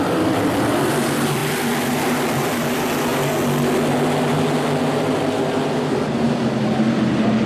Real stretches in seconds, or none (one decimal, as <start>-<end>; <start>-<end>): 3.1-7.5